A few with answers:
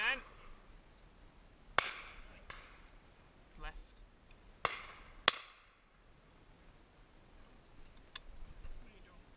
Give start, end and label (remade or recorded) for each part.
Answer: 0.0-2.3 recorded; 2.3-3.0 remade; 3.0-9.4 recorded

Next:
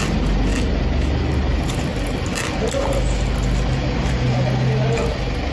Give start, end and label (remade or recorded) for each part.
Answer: 0.0-5.5 recorded

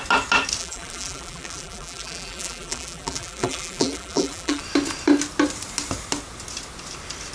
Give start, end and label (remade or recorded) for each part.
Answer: 0.0-0.6 recorded; 0.6-4.6 remade; 4.6-7.3 recorded

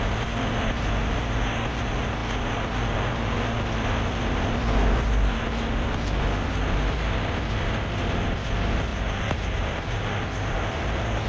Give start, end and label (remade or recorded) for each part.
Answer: 0.0-8.9 recorded; 8.9-10.0 remade; 10.0-11.3 recorded